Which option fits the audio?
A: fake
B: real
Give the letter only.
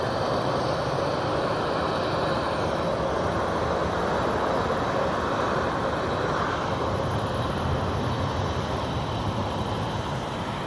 B